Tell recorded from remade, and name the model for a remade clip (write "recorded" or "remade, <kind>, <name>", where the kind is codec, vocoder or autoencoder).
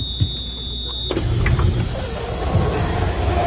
recorded